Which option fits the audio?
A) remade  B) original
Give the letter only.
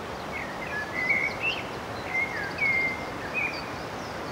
B